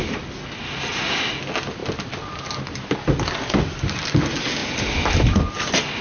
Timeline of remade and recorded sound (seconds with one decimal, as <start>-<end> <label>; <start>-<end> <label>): 0.0-6.0 recorded